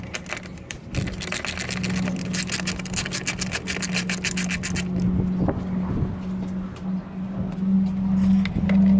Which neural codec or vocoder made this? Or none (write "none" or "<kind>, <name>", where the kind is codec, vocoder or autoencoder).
none